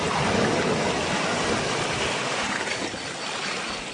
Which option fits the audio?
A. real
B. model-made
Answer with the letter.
A